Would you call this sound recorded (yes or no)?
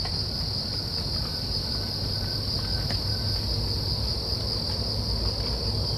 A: yes